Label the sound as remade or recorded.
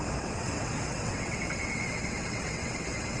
remade